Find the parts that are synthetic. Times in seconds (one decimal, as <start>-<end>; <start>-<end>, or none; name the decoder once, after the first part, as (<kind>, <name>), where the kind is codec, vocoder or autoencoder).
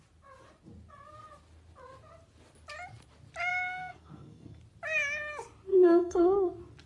3.5-4.6 (codec, SNAC); 5.7-6.5